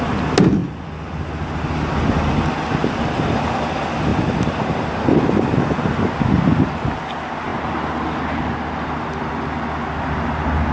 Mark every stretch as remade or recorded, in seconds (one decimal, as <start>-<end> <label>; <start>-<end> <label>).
0.0-10.7 recorded